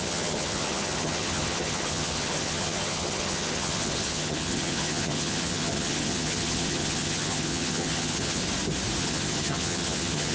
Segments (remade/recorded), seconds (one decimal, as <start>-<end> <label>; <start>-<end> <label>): 0.0-8.4 remade; 8.4-9.0 recorded; 9.0-10.3 remade